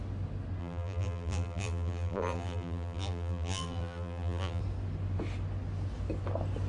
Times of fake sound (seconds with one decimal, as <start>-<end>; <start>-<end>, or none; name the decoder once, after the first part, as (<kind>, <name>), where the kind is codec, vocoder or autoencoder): 0.6-4.6 (vocoder, BigVGAN v2)

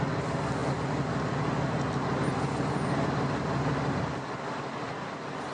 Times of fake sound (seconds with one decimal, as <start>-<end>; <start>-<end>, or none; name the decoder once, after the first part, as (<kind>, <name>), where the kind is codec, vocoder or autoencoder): none

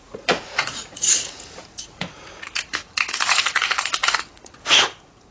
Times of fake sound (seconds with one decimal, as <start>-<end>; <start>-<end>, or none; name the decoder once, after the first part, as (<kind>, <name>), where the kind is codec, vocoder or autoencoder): 0.0-5.3 (vocoder, Vocos)

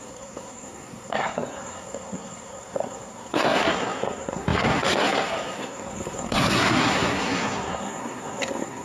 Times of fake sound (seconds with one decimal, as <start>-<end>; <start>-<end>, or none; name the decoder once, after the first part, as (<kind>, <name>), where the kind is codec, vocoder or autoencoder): 0.0-8.8 (codec, SNAC)

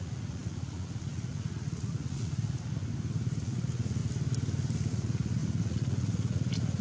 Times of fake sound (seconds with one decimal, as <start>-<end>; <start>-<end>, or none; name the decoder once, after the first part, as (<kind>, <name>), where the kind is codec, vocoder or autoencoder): 0.0-2.8 (vocoder, Vocos); 3.4-4.0; 4.9-6.8

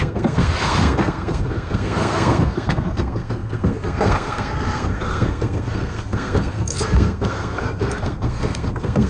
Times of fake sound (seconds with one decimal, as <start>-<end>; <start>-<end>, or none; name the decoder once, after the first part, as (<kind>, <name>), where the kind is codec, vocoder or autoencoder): 0.0-9.1 (codec, SNAC)

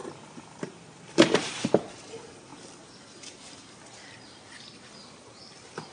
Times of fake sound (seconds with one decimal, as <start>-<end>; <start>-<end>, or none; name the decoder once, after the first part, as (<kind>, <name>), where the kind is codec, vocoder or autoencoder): 0.0-1.5 (vocoder, BigVGAN v2); 5.0-5.9